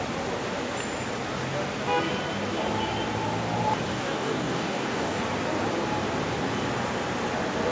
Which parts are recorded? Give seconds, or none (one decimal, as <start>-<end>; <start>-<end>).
0.0-3.9; 5.2-7.7